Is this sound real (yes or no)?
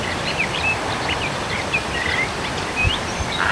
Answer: no